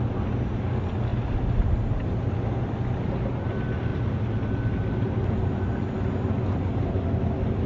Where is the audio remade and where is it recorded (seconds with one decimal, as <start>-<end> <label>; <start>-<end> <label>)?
0.0-7.7 recorded